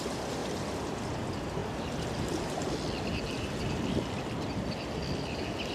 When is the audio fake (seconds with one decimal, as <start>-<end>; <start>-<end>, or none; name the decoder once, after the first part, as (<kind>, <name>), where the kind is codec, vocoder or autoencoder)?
none